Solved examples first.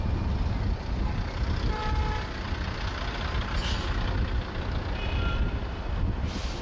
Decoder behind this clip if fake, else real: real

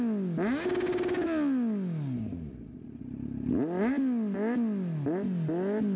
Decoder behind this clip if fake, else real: real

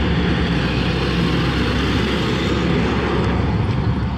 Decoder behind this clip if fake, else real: real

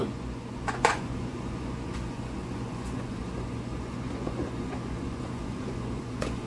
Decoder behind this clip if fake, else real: fake, vocoder, Vocos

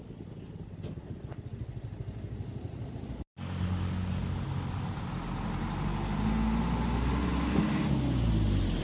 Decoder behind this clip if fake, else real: real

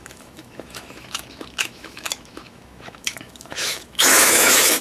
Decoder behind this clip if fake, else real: fake, autoencoder, DAC-VAE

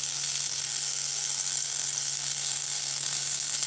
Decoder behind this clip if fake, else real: fake, codec, SNAC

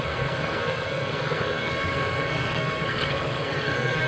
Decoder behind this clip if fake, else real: fake, codec, SNAC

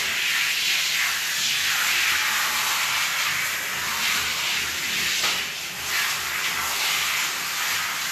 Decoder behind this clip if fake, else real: real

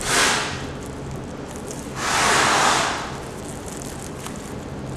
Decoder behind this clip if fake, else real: real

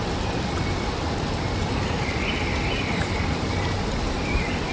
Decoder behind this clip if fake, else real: real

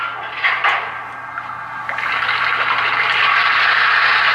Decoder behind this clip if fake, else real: real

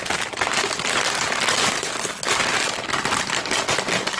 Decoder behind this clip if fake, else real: real